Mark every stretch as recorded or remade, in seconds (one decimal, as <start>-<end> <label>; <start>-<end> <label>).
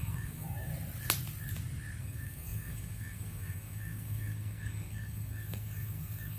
0.0-0.7 remade; 0.7-2.0 recorded; 2.0-6.4 remade